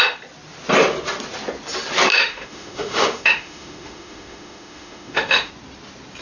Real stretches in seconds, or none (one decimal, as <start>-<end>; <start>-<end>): 0.0-2.1; 5.5-6.2